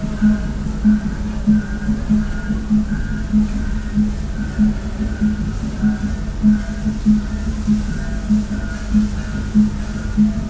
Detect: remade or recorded recorded